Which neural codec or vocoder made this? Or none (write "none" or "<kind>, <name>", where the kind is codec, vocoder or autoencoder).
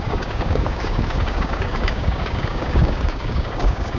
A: codec, DAC